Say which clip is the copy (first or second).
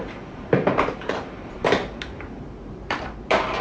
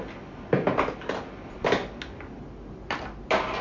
first